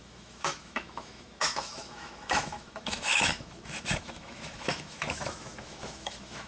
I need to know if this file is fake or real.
fake